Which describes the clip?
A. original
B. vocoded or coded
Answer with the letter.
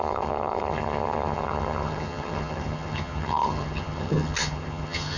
B